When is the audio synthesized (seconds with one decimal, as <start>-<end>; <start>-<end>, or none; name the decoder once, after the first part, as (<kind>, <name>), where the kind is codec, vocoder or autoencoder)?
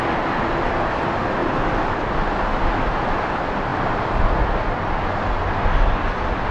none